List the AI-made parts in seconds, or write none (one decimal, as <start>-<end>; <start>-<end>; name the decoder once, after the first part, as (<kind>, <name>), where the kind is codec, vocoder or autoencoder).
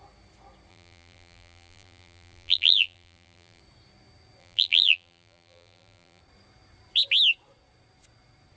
0.7-3.6 (vocoder, BigVGAN v2); 4.4-6.2